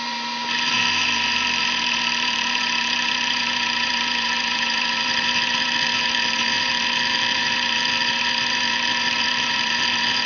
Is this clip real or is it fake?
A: fake